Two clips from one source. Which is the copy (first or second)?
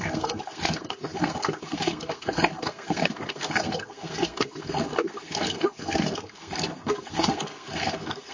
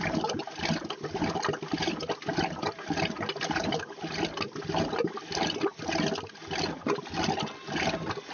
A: first